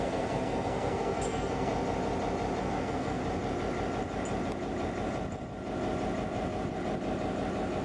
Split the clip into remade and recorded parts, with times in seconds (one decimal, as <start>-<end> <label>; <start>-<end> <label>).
0.0-1.7 remade; 1.7-2.6 recorded; 2.6-3.2 remade; 3.2-7.8 recorded